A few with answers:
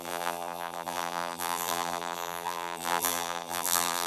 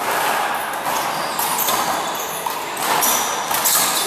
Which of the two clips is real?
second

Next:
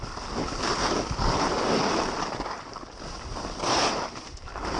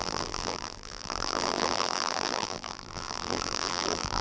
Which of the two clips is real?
first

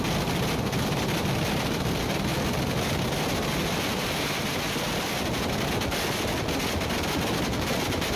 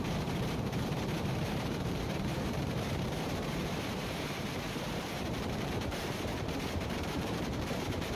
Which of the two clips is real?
first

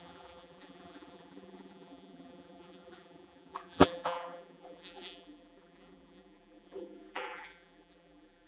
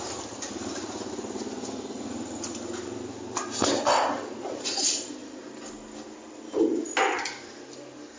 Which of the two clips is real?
second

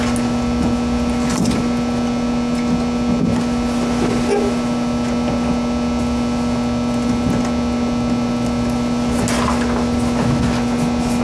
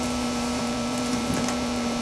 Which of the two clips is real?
first